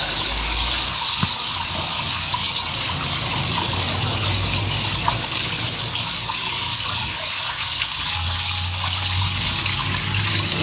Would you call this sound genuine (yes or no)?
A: no